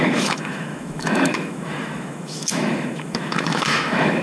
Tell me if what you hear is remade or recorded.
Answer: remade